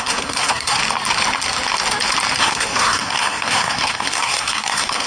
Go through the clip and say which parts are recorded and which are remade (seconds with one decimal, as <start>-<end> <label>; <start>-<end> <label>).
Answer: 0.0-0.8 remade; 0.8-2.4 recorded; 2.4-5.1 remade